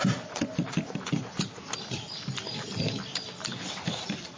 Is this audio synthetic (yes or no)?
yes